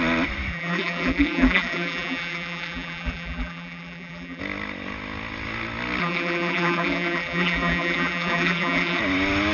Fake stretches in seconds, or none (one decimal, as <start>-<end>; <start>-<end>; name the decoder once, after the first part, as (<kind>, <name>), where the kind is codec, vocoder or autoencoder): 0.5-4.4 (vocoder, BigVGAN v2); 6.0-9.0